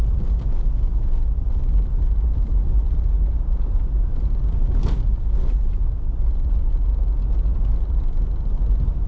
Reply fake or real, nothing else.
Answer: real